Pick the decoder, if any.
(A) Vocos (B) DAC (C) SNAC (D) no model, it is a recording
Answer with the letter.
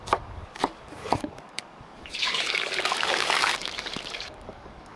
B